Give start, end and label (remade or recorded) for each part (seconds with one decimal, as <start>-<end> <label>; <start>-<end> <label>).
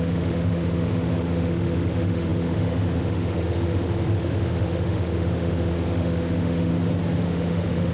0.0-6.7 remade; 6.7-7.2 recorded; 7.2-7.9 remade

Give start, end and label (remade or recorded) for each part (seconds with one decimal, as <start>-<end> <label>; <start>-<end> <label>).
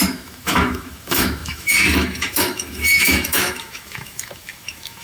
0.0-5.0 remade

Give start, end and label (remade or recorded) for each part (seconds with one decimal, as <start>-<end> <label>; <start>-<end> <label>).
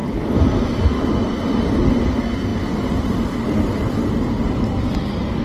0.0-5.4 recorded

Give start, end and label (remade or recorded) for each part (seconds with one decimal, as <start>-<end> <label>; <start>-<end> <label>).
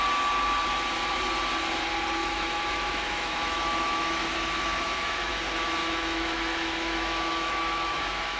0.0-2.2 recorded; 2.2-5.3 remade; 5.3-5.8 recorded; 5.8-8.4 remade